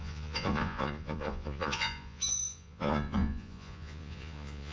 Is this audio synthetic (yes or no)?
yes